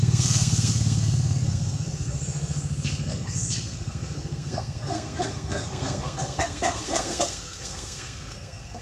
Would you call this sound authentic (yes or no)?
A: no